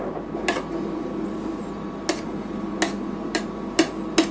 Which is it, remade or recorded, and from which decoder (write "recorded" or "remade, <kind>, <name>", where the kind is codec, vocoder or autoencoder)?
recorded